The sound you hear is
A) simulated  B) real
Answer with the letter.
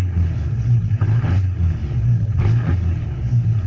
A